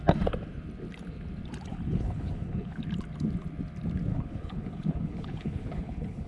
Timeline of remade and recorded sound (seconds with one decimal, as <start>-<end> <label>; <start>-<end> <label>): 0.0-1.7 recorded; 1.7-2.8 remade; 2.8-4.1 recorded; 4.1-6.3 remade